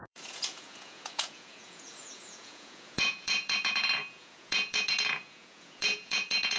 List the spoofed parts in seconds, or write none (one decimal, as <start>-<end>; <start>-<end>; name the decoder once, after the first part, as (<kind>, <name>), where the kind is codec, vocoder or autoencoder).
0.0-6.6 (vocoder, Vocos)

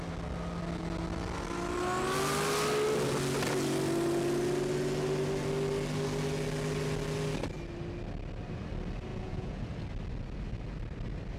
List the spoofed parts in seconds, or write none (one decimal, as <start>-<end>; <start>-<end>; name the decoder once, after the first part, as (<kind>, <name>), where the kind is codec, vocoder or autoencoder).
9.1-9.6 (vocoder, Vocos)

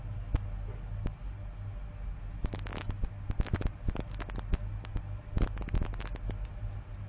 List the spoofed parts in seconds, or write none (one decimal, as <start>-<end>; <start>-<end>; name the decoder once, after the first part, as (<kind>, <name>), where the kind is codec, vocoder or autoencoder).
none

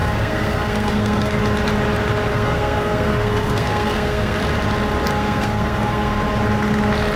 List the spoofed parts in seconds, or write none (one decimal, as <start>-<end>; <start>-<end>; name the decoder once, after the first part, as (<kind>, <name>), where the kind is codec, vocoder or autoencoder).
0.0-1.4 (codec, SNAC); 2.3-4.4; 5.1-6.2

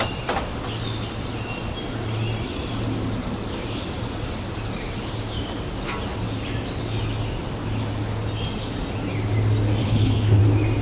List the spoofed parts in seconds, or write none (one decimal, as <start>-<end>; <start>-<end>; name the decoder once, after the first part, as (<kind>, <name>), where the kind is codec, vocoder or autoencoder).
9.8-10.4 (codec, HILCodec)

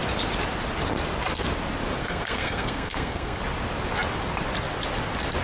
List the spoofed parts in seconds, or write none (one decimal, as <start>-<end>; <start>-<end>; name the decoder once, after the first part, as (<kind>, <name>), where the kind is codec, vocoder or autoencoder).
2.0-3.4 (codec, SNAC)

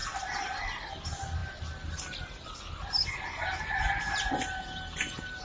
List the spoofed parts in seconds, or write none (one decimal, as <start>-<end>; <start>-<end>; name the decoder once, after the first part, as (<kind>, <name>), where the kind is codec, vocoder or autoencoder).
none